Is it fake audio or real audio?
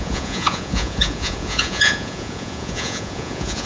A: fake